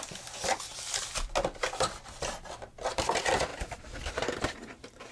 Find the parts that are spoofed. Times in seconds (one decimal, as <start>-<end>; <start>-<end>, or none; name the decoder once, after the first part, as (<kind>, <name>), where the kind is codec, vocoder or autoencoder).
none